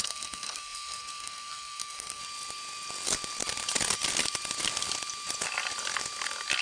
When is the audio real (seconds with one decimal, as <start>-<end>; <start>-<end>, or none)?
2.2-6.6